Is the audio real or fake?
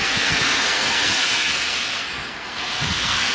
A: fake